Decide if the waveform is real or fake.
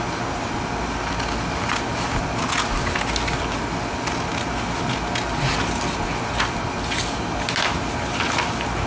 real